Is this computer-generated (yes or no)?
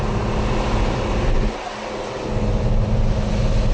no